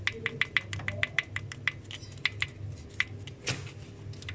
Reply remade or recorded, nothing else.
recorded